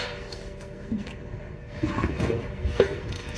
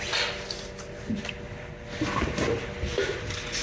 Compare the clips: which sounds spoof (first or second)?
first